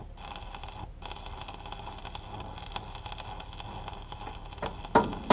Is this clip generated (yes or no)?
no